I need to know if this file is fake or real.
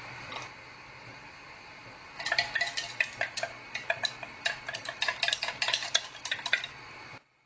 real